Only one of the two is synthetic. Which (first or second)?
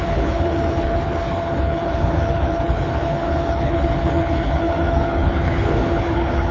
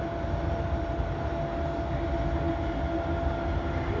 first